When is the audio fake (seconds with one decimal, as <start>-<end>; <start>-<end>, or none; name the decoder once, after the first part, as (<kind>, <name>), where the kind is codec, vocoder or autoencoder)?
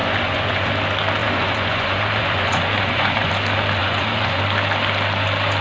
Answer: 0.0-0.7 (vocoder, Vocos); 1.2-3.3; 3.8-4.4